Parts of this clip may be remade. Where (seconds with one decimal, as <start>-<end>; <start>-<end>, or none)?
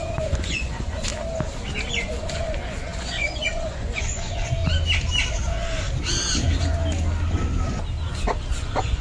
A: 0.0-1.1; 1.9-4.6; 8.5-9.0